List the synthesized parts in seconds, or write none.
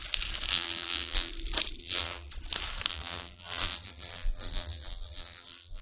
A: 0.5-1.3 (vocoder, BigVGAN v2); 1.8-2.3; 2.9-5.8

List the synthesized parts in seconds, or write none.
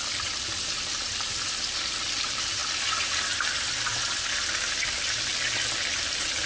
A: none